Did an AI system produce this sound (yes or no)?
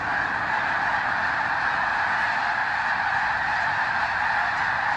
no